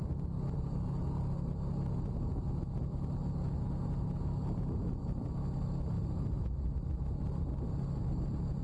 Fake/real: real